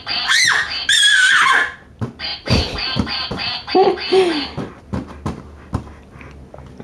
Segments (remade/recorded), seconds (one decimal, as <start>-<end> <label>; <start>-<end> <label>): 0.0-6.8 recorded